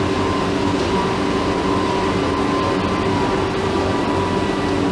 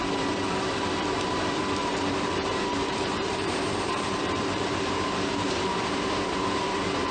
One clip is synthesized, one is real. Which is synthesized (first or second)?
second